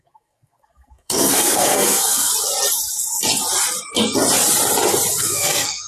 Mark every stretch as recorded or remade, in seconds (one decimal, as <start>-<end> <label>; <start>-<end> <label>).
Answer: 0.0-2.3 remade; 2.3-5.2 recorded; 5.2-5.9 remade